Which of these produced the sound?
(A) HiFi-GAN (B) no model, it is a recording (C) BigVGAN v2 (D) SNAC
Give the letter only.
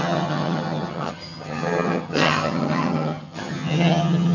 A